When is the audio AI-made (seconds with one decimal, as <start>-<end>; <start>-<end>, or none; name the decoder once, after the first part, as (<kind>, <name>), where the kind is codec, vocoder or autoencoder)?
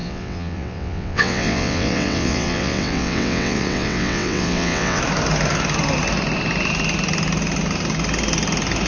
0.0-5.0 (vocoder, WaveNeXt)